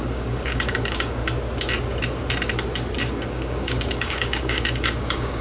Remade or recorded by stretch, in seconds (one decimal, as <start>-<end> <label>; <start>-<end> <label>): 0.0-1.2 remade; 1.2-3.1 recorded; 3.1-5.4 remade